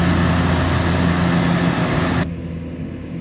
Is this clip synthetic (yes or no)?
no